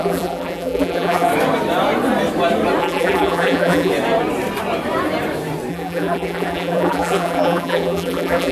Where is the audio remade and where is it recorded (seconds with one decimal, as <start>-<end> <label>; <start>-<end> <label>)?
0.0-1.3 remade; 1.3-2.8 recorded; 2.8-3.9 remade; 3.9-5.7 recorded; 5.7-8.5 remade